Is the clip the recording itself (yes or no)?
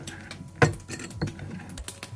yes